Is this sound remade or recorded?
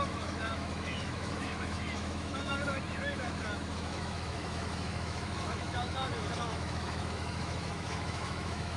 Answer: remade